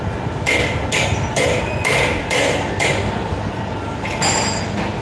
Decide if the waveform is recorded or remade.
recorded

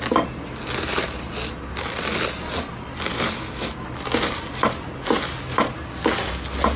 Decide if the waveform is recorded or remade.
recorded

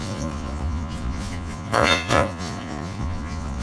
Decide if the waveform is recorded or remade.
remade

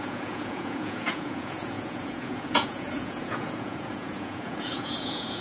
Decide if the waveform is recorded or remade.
remade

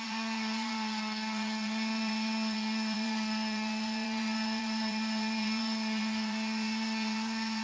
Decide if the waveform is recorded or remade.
remade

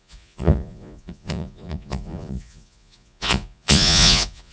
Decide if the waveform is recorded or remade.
remade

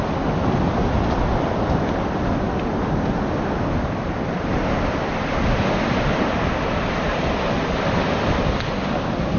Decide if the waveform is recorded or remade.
recorded